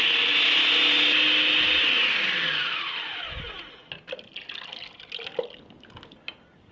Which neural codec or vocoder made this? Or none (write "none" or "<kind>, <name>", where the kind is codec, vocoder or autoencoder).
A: none